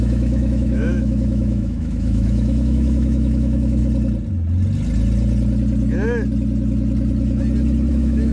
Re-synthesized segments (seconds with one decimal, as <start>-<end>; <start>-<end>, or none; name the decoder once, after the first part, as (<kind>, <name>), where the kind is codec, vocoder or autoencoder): 0.0-3.8 (autoencoder, DAC-VAE); 7.9-8.3